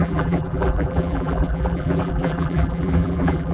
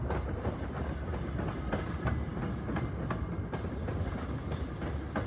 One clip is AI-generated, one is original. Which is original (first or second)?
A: second